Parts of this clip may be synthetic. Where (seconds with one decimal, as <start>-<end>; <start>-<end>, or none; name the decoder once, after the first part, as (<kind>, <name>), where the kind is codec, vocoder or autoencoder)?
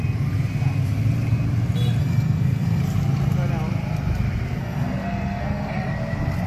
2.0-2.8 (codec, SNAC); 4.6-5.9